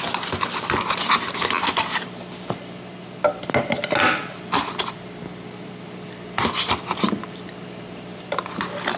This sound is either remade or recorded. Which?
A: recorded